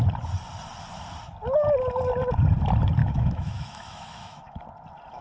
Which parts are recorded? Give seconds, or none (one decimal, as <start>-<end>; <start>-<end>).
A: 0.0-3.0; 4.6-5.2